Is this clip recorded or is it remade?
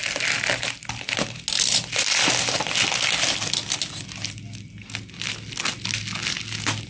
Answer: recorded